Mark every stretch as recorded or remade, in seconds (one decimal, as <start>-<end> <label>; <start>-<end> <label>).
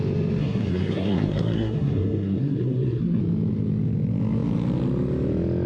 0.0-0.4 recorded; 0.4-3.2 remade; 3.2-5.7 recorded